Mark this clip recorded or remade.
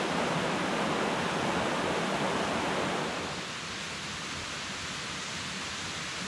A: recorded